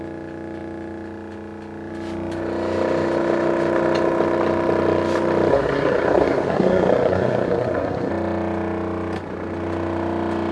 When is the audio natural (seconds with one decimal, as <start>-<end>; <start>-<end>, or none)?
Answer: 0.0-5.5; 8.1-10.5